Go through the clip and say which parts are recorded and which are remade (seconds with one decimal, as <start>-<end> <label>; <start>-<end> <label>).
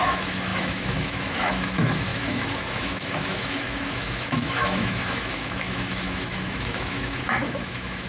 0.0-8.1 remade